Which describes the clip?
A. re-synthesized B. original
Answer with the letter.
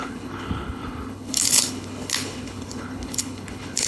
A